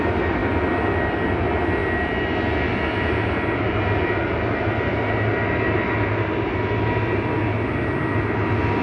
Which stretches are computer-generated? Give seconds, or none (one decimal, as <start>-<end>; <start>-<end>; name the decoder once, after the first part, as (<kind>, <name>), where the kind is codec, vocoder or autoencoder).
none